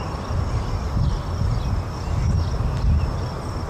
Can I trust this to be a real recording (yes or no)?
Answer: yes